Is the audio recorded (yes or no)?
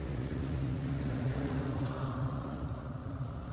no